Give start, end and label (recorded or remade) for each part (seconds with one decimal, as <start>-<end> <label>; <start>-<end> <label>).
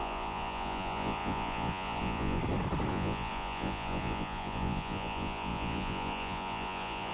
0.0-2.4 remade; 2.4-2.9 recorded; 2.9-7.1 remade